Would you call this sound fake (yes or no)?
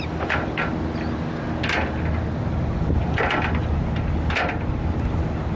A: no